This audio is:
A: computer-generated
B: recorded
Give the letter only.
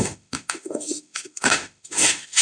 A